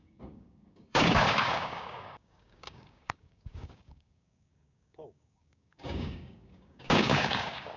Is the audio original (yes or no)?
no